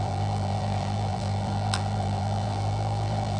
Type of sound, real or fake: fake